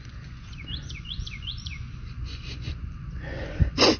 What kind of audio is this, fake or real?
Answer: fake